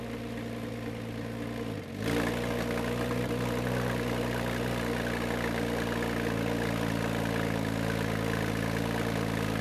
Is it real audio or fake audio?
real